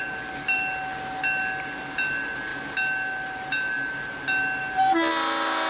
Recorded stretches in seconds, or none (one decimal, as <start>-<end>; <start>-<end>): 0.0-5.7